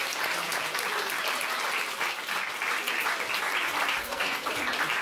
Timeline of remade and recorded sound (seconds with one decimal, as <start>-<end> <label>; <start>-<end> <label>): 0.0-4.0 recorded; 4.0-4.5 remade; 4.5-5.0 recorded